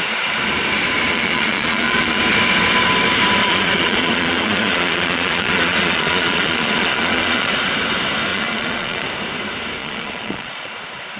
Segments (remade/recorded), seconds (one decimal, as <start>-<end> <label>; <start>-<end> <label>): 0.0-1.1 recorded; 1.1-2.2 remade; 2.2-3.4 recorded; 3.4-7.5 remade; 7.5-8.3 recorded; 8.3-9.1 remade; 9.1-9.8 recorded; 9.8-10.7 remade; 10.7-11.2 recorded